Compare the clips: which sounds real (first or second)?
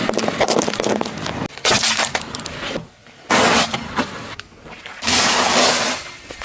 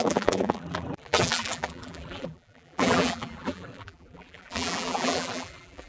first